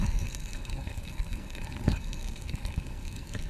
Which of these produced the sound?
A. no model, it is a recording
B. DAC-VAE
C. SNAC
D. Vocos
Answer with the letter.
C